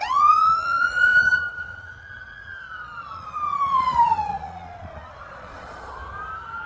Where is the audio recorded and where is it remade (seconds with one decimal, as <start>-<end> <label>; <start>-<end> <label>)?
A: 0.0-6.0 remade; 6.0-6.7 recorded